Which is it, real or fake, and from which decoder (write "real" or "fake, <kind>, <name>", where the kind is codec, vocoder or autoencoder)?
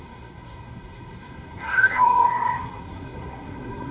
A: fake, codec, SNAC